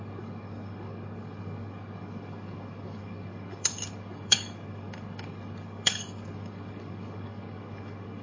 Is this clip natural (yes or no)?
no